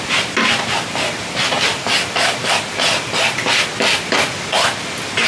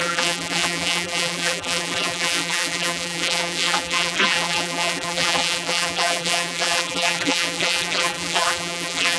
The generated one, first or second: second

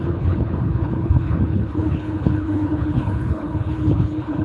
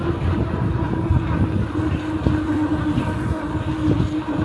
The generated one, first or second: first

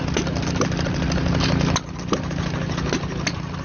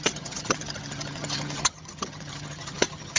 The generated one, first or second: second